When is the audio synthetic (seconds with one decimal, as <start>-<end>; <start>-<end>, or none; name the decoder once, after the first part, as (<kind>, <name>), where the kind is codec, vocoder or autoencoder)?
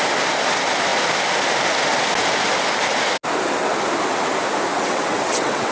4.7-5.7 (vocoder, WaveNeXt)